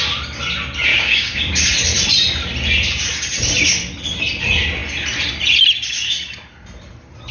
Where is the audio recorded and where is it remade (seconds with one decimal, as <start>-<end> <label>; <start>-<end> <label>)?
0.0-0.9 recorded; 0.9-1.5 remade; 1.5-7.3 recorded